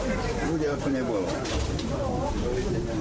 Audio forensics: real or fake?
real